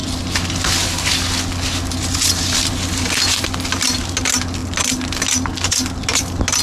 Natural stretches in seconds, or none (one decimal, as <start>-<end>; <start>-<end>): 0.0-6.6